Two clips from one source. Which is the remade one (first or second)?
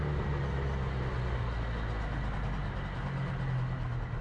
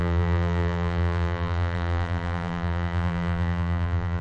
second